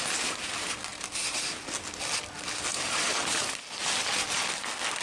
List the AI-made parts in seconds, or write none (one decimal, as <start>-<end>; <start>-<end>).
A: 0.9-1.4; 2.7-3.5